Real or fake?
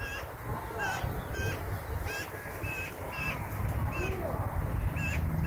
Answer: real